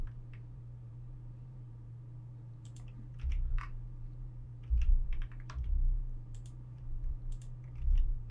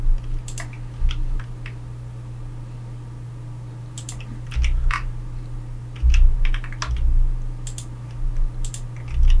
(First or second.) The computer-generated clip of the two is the first